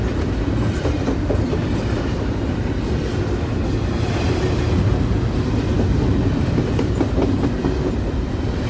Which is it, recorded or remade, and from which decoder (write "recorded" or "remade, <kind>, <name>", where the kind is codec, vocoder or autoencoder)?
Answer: recorded